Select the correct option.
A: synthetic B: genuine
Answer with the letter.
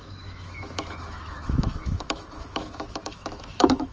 A